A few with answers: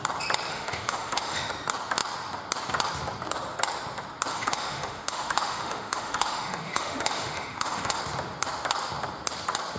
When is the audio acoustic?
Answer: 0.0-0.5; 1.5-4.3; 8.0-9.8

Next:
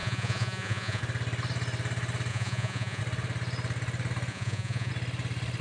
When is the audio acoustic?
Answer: 1.0-2.3; 3.0-4.3; 4.9-5.6